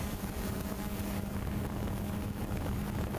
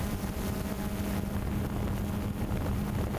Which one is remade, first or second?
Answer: first